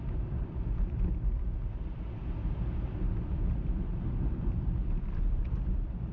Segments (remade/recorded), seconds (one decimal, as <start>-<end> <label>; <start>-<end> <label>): 0.0-1.1 remade; 1.1-2.4 recorded; 2.4-6.1 remade